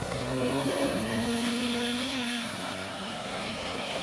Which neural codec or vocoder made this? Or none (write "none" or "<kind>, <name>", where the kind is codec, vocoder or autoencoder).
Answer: codec, SNAC